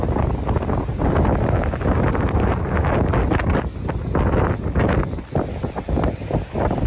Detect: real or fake real